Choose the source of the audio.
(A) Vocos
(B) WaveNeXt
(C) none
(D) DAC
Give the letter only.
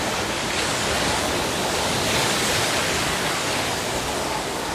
D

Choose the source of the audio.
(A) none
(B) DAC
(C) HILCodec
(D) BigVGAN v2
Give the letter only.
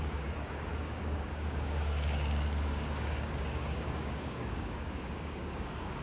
B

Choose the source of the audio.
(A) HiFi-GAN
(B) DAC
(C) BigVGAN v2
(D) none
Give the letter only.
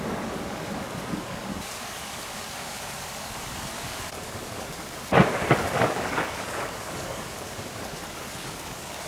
B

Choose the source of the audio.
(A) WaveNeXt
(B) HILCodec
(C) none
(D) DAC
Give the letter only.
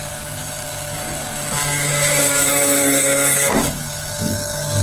D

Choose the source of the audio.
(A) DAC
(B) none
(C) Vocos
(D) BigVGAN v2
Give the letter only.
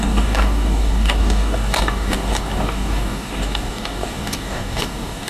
A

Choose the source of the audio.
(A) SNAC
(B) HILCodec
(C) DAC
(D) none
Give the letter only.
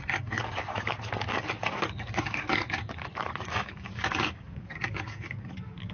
C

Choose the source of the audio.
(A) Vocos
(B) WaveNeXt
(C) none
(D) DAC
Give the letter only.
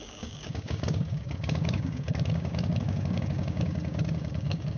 D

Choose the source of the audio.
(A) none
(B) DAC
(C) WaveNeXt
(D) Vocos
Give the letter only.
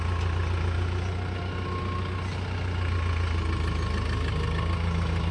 A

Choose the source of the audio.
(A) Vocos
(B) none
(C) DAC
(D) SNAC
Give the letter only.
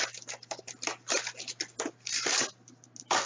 B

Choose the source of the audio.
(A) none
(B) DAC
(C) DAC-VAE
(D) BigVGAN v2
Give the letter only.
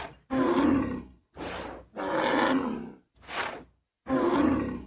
A